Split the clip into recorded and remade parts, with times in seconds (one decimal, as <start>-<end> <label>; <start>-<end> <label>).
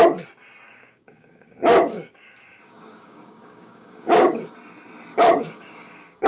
0.0-0.7 recorded; 0.7-4.4 remade; 4.4-5.1 recorded; 5.1-6.3 remade